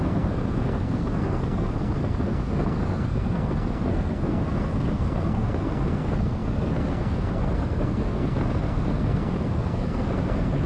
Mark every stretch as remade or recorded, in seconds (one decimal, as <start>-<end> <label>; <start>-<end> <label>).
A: 0.0-10.7 remade